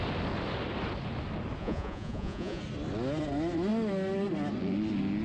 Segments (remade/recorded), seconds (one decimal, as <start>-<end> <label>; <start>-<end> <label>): 0.0-1.6 recorded; 1.6-2.6 remade; 2.6-5.2 recorded